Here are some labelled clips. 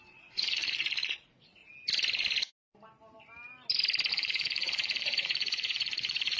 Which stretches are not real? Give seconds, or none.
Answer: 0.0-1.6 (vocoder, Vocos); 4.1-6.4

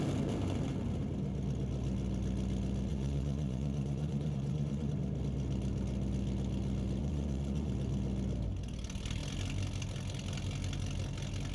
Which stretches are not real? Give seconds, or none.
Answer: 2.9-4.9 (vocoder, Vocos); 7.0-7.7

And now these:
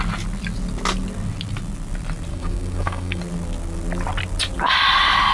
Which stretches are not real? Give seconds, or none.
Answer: 2.3-3.2 (codec, SNAC)

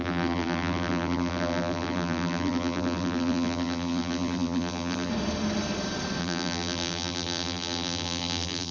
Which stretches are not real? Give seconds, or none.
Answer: 0.0-5.1 (vocoder, BigVGAN v2); 6.2-8.7